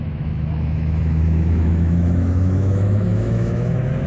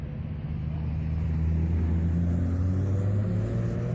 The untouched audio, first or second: second